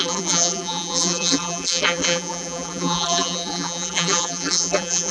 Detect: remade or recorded remade